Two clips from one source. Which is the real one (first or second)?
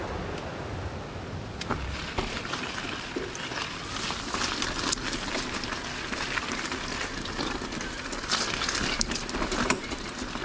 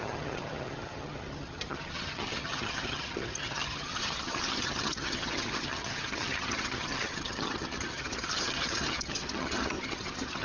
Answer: first